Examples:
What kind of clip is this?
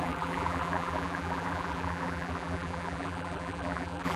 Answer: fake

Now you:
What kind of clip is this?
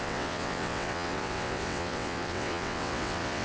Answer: fake